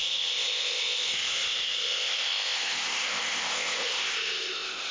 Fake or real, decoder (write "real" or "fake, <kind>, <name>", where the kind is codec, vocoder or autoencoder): fake, codec, ZipCodec